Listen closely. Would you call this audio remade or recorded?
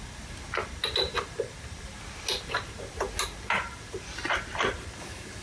recorded